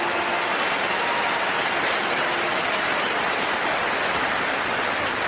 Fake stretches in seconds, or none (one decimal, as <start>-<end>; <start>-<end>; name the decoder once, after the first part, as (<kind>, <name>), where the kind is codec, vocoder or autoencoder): none